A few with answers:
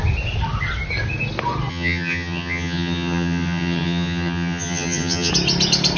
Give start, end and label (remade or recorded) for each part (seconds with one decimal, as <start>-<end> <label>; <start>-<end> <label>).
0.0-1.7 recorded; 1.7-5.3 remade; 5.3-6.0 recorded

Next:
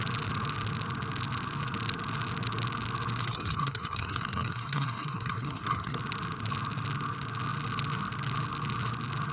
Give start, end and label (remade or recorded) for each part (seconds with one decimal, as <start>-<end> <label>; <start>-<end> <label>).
0.0-3.2 recorded; 3.2-6.0 remade; 6.0-9.3 recorded

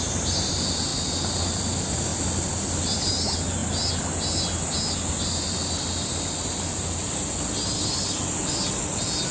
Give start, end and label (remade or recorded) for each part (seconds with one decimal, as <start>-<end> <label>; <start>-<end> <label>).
0.0-9.3 recorded

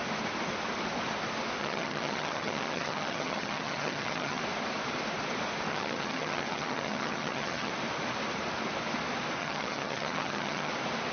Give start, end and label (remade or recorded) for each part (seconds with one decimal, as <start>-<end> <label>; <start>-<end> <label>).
0.0-1.6 recorded; 1.6-4.4 remade; 4.4-5.7 recorded; 5.7-7.7 remade; 7.7-9.4 recorded; 9.4-10.7 remade; 10.7-11.1 recorded

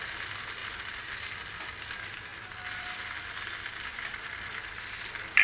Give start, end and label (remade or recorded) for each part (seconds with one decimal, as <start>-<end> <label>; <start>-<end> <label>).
0.0-0.6 recorded; 0.6-1.4 remade; 1.4-2.3 recorded; 2.3-3.1 remade; 3.1-3.9 recorded; 3.9-5.4 remade

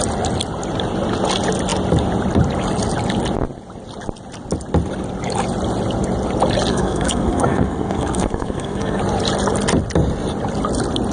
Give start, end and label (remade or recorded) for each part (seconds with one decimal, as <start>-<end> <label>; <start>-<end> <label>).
0.0-6.7 recorded; 6.7-9.0 remade; 9.0-11.1 recorded

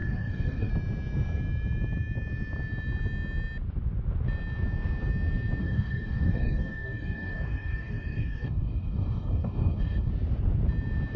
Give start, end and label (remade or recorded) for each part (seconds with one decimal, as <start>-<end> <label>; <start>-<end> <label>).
0.0-0.7 remade; 0.7-5.6 recorded; 5.6-10.1 remade; 10.1-11.2 recorded